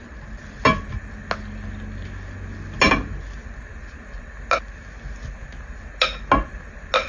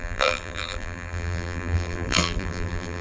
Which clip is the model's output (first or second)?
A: second